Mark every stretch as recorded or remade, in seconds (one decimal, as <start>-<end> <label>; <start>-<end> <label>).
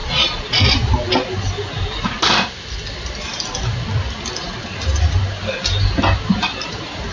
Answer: 0.0-7.1 recorded